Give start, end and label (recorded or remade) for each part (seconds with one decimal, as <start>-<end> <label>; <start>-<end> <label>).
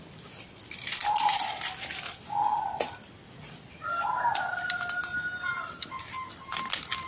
0.0-7.1 recorded